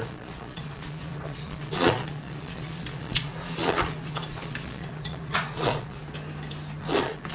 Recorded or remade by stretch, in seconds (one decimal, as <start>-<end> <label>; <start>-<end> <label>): 0.0-6.0 remade; 6.0-6.8 recorded; 6.8-7.3 remade